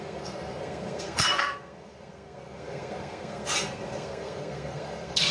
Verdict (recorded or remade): remade